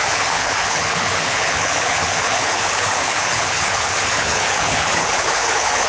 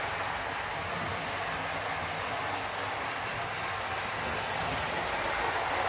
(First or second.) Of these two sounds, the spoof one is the first